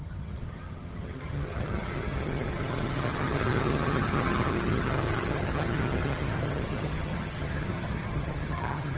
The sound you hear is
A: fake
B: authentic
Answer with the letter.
A